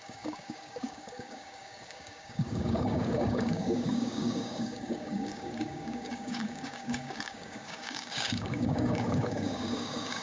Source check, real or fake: fake